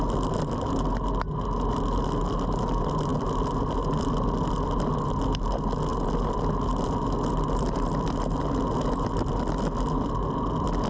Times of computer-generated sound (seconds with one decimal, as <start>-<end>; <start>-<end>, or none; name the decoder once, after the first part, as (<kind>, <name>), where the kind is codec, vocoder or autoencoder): none